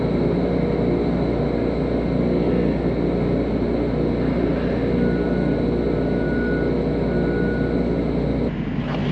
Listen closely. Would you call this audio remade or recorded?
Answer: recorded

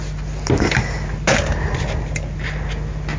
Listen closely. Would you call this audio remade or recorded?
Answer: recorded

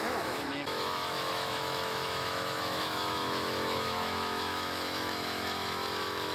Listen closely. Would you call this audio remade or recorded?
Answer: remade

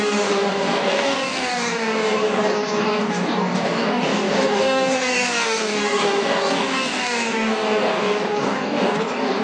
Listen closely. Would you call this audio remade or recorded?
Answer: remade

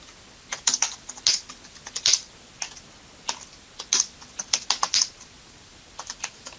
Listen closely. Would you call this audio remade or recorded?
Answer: recorded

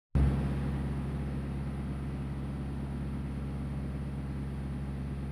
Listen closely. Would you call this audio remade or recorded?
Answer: recorded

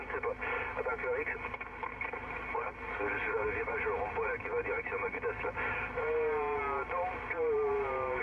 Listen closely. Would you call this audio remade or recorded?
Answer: recorded